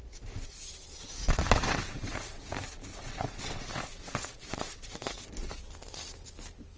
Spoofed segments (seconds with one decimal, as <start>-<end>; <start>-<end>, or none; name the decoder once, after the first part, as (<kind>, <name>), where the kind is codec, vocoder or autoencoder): 1.2-2.4 (vocoder, WaveNeXt); 2.9-5.2